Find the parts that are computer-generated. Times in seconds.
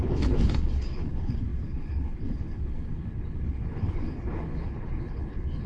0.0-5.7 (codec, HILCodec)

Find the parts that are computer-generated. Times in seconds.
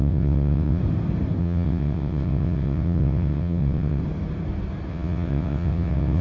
0.0-0.8 (vocoder, WaveNeXt); 1.4-4.0; 4.9-6.2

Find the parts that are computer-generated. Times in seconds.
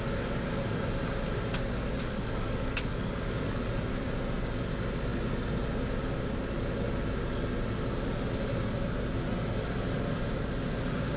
1.9-3.6 (codec, DAC)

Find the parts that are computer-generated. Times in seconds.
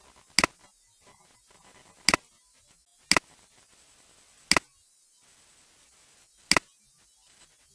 none